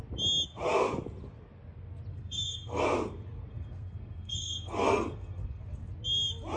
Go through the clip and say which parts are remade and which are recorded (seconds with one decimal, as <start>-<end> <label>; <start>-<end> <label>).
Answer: 0.0-2.1 recorded; 2.1-2.8 remade; 2.8-3.5 recorded; 3.5-5.6 remade; 5.6-6.6 recorded